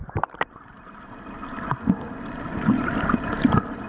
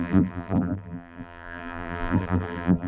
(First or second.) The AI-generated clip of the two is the second